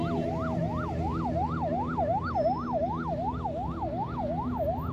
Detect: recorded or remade recorded